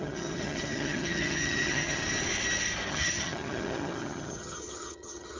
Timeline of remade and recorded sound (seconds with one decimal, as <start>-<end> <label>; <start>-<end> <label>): 0.0-2.0 remade; 2.0-2.9 recorded; 2.9-5.4 remade